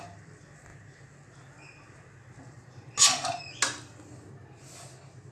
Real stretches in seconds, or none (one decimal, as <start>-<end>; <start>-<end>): 0.0-5.3